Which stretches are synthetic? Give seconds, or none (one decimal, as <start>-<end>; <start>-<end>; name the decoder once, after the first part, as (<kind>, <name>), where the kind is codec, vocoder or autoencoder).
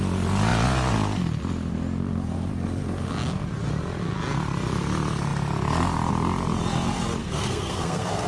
7.2-8.3 (codec, SNAC)